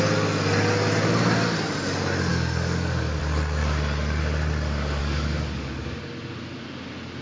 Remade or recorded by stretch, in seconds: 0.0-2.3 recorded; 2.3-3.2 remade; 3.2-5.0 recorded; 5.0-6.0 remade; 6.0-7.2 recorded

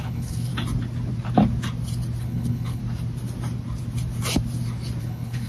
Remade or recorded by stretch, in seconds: 0.0-0.5 remade; 0.5-2.2 recorded; 2.2-2.8 remade; 2.8-5.0 recorded; 5.0-5.5 remade

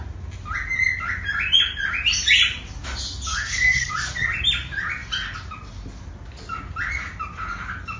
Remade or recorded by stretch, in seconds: 0.0-3.3 recorded; 3.3-3.9 remade; 3.9-8.0 recorded